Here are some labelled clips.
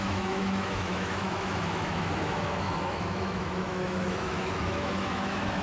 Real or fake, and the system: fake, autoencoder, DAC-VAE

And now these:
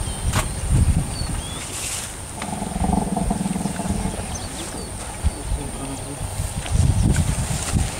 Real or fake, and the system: real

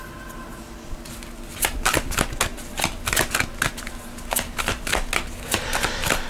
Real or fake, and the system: real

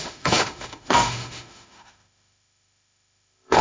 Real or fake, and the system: fake, autoencoder, DAC-VAE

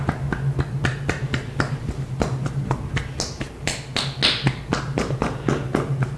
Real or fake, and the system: real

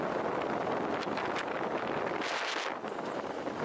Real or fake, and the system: real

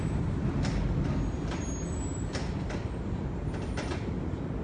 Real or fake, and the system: real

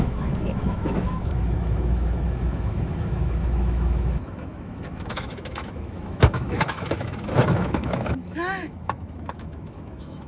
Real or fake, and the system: fake, autoencoder, DAC-VAE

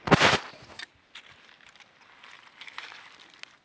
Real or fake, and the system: real